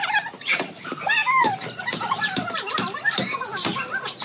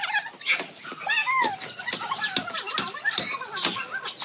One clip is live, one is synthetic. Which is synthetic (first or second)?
first